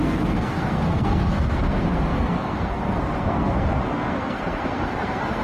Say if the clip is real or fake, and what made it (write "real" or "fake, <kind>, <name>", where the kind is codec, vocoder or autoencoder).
fake, codec, SNAC